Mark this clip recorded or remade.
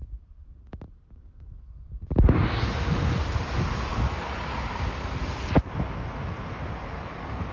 recorded